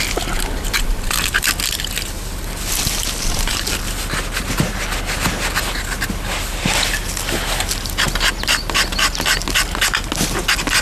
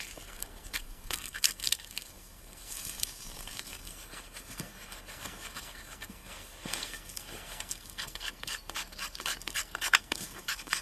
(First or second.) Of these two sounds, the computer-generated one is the second